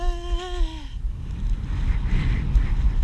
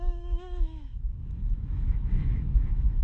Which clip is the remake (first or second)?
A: second